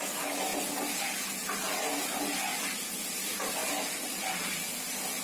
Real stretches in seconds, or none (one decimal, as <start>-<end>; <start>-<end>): 0.0-5.2